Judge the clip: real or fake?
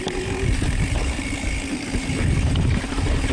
fake